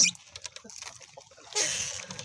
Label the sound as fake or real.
real